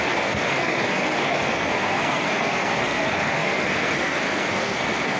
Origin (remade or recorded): remade